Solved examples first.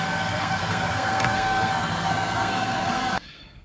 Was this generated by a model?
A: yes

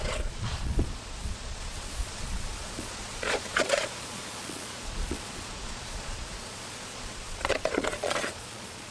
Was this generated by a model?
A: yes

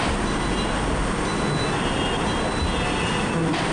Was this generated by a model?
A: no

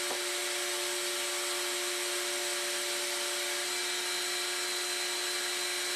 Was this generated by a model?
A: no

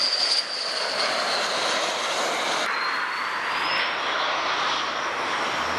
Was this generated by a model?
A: no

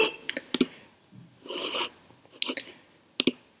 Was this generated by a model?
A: no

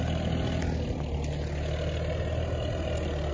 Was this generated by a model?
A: no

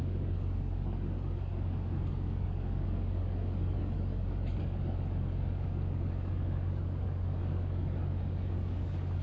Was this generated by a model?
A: yes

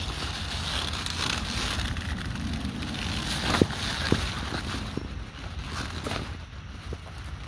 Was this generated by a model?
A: no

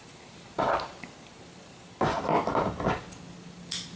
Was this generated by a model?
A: no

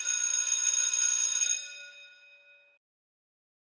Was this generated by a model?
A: no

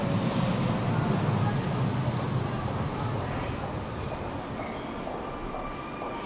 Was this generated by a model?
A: no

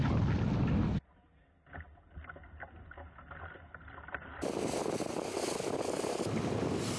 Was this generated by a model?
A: no